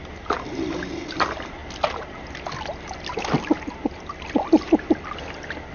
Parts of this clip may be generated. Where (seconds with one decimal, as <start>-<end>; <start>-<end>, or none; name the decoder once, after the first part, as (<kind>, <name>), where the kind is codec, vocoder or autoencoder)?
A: none